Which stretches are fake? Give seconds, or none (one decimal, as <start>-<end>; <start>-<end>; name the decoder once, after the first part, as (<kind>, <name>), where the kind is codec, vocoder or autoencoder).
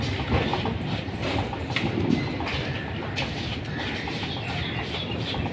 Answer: none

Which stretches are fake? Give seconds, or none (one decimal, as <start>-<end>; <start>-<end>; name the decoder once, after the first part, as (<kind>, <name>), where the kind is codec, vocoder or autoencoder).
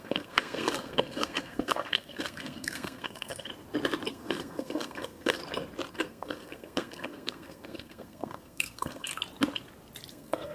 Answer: 0.0-3.5 (codec, SNAC); 4.1-5.4; 5.9-9.1; 10.1-10.5